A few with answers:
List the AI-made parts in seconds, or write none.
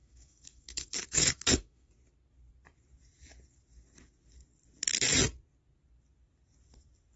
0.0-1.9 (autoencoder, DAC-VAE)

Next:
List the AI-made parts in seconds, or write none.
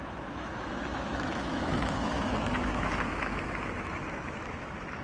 0.0-5.0 (autoencoder, DAC-VAE)